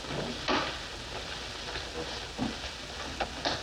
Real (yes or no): yes